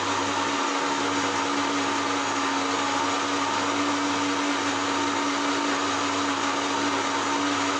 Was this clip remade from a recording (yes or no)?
no